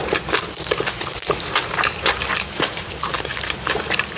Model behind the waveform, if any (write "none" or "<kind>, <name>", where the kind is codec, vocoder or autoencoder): vocoder, BigVGAN v2